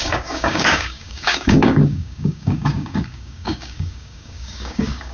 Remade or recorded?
remade